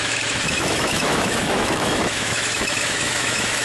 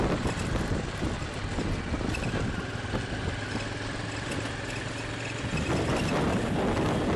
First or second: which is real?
second